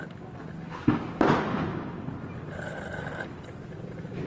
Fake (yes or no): no